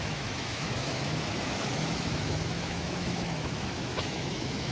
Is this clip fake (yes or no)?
yes